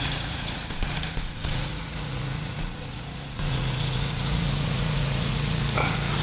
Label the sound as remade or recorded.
remade